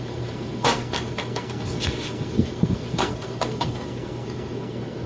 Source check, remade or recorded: remade